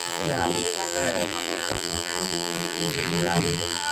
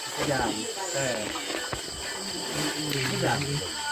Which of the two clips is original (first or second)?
second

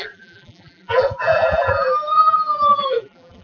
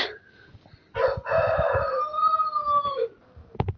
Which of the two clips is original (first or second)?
second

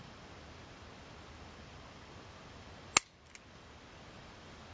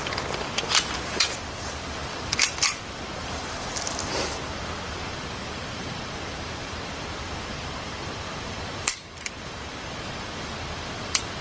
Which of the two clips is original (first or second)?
first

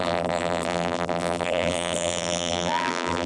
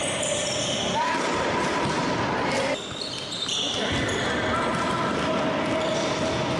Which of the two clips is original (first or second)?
second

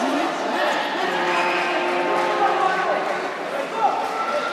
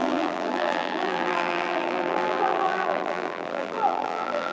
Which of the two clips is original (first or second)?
first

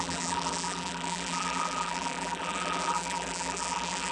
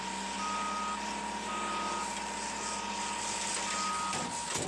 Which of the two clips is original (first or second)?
second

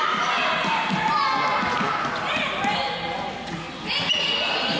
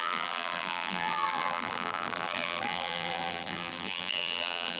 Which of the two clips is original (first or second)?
first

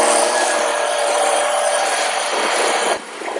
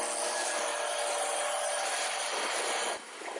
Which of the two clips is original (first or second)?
second